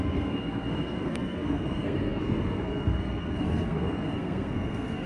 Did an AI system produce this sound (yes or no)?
yes